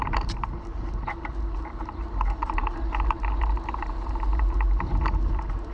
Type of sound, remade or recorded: remade